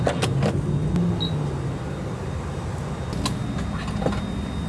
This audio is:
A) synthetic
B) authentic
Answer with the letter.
B